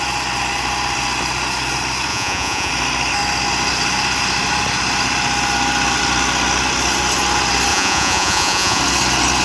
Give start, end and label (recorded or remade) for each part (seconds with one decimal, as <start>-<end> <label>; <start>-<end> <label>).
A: 0.0-2.1 recorded; 2.1-2.7 remade; 2.7-7.7 recorded; 7.7-8.8 remade; 8.8-9.4 recorded